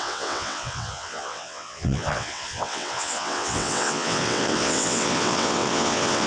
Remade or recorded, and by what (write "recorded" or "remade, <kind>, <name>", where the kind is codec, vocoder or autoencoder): remade, vocoder, WaveNeXt